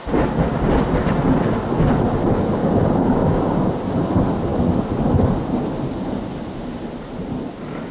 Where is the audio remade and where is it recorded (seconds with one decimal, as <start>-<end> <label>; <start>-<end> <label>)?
0.0-2.6 recorded; 2.6-3.7 remade; 3.7-7.9 recorded